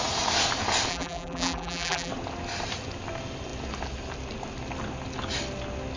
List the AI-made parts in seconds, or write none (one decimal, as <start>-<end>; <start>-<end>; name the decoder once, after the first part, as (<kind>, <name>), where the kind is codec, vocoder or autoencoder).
0.9-2.1 (vocoder, BigVGAN v2)